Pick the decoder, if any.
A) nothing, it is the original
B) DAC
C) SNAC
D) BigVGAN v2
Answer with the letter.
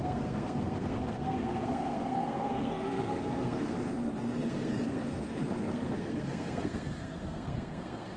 C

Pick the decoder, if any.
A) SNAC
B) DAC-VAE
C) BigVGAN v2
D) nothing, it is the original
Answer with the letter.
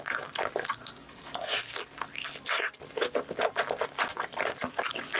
D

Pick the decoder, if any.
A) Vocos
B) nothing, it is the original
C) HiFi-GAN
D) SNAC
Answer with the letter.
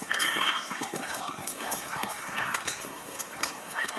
D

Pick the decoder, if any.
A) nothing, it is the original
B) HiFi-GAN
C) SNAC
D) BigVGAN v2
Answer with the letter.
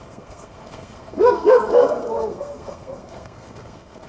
C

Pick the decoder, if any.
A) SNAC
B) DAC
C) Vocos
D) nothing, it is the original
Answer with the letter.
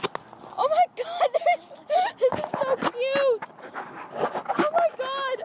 D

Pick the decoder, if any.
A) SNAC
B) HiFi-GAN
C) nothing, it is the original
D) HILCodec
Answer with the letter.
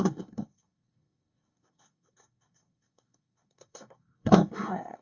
A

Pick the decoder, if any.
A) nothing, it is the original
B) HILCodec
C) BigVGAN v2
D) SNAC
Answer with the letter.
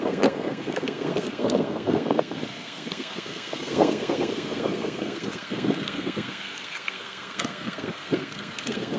D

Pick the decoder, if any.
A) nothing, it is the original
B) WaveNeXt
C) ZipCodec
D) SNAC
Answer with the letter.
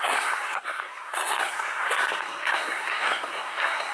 D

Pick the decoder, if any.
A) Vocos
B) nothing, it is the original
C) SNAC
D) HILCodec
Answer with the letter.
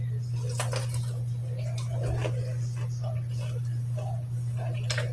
B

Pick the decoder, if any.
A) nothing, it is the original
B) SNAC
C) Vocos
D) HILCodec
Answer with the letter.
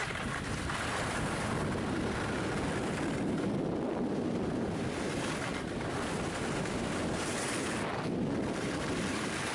A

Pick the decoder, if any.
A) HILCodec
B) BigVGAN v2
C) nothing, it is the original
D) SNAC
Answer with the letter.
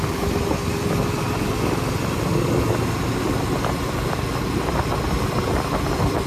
C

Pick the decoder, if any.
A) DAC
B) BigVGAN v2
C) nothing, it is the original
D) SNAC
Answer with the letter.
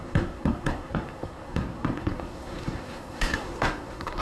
D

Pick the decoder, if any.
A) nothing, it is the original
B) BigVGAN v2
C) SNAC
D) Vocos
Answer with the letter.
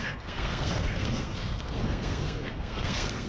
C